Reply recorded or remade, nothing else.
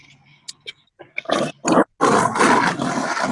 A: recorded